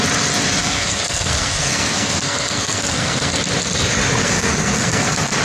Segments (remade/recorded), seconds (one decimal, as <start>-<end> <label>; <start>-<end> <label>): 0.0-0.6 recorded; 0.6-3.4 remade; 3.4-4.2 recorded; 4.2-5.4 remade